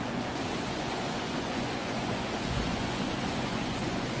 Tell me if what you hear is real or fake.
fake